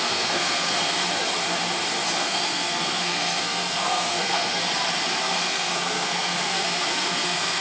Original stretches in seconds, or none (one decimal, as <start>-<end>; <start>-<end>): 1.0-2.2; 4.6-5.2